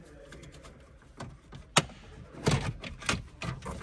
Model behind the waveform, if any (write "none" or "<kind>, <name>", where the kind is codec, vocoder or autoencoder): none